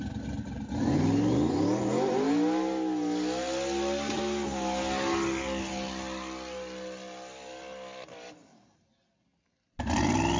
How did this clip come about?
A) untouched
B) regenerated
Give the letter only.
A